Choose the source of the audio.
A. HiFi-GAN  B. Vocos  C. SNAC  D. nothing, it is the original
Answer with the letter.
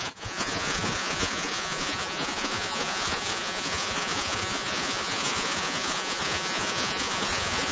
B